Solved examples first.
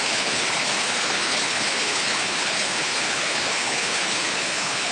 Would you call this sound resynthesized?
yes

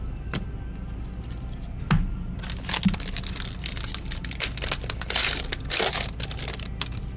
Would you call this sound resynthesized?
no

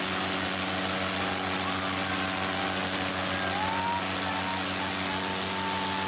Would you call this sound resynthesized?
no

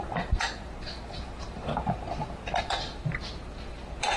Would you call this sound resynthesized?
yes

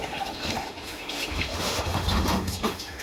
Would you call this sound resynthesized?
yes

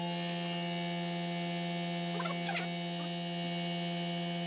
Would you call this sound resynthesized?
no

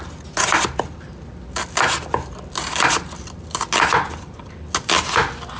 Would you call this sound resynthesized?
no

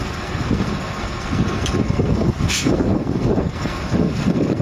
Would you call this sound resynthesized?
yes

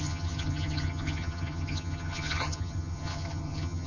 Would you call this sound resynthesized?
yes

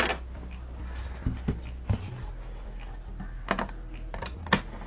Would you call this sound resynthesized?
no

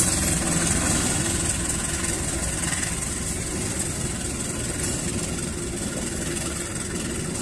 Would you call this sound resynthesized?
no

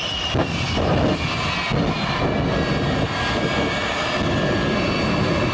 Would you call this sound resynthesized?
no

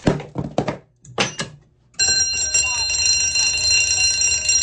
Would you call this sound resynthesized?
no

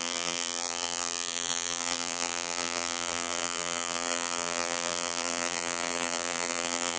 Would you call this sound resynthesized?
yes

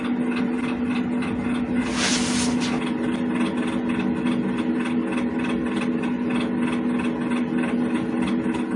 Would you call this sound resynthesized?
no